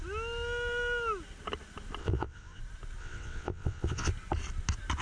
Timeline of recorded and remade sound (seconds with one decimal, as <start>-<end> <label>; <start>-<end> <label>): 0.0-2.0 recorded; 2.0-2.6 remade; 2.6-3.0 recorded; 3.0-4.1 remade; 4.1-5.0 recorded